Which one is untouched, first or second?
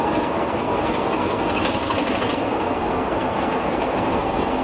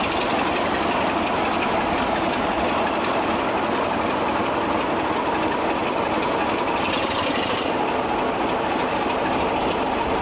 second